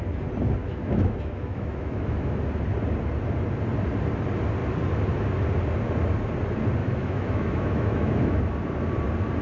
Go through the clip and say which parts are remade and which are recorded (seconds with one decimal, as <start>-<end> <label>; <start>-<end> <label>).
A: 0.0-0.6 recorded; 0.6-2.3 remade; 2.3-6.8 recorded; 6.8-8.4 remade; 8.4-9.4 recorded